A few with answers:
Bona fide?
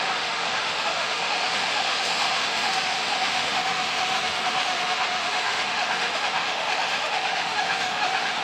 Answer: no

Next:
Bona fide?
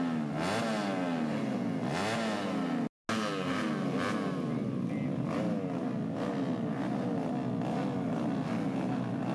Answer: yes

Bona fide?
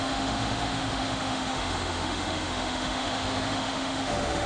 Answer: no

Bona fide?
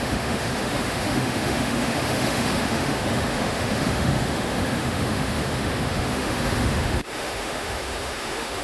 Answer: no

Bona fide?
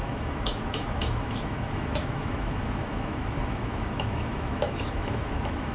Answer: no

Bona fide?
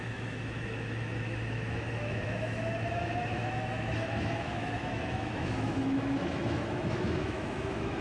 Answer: no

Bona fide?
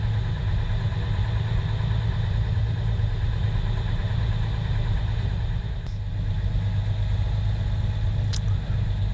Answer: yes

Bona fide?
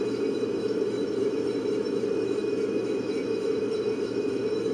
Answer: no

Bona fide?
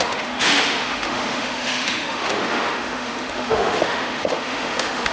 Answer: no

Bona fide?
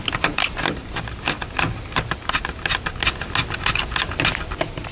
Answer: yes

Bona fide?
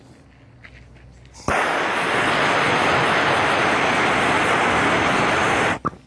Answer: yes